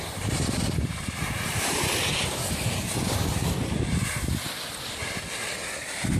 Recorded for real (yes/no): yes